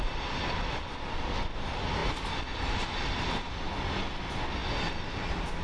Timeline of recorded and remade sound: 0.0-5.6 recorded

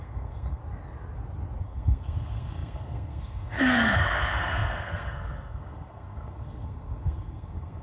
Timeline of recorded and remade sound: 0.0-0.6 remade; 0.6-1.6 recorded; 1.6-7.8 remade

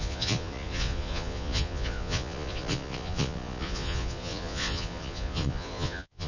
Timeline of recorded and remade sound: 0.0-6.3 remade

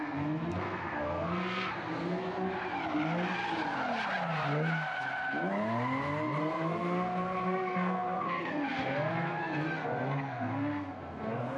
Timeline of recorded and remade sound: 0.0-2.2 remade; 2.2-6.4 recorded; 6.4-11.6 remade

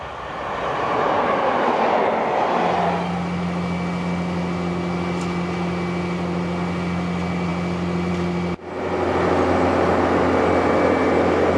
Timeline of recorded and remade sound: 0.0-11.6 recorded